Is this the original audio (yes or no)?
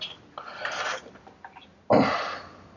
yes